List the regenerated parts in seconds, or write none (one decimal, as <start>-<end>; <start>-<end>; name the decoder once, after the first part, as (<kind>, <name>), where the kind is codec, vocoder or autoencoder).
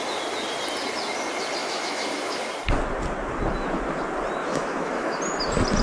1.6-2.4 (autoencoder, DAC-VAE); 4.4-5.2